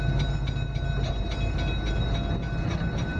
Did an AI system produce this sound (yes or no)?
no